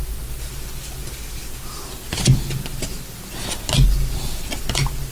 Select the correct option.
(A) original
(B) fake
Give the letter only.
A